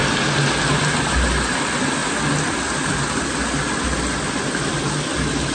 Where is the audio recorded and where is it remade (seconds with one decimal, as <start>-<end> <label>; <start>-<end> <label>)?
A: 0.0-5.5 recorded

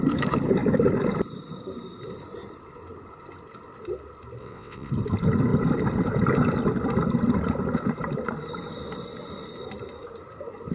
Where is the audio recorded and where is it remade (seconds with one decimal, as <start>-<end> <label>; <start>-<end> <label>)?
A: 0.0-4.4 recorded; 4.4-4.9 remade; 4.9-10.7 recorded

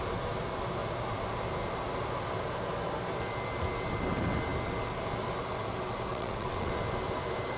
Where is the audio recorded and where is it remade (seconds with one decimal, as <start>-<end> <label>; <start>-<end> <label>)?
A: 0.0-6.1 recorded; 6.1-6.7 remade; 6.7-7.6 recorded

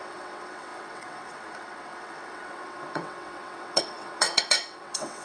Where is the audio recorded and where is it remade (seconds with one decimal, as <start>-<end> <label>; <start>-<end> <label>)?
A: 0.0-5.2 remade

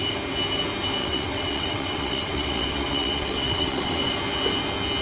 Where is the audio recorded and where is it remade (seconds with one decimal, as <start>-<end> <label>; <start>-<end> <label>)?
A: 0.0-1.0 recorded; 1.0-4.0 remade; 4.0-5.0 recorded